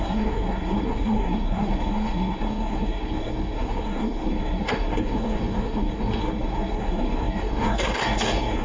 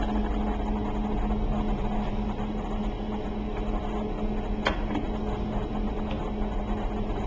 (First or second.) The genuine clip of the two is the second